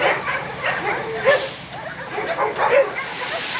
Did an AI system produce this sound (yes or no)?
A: no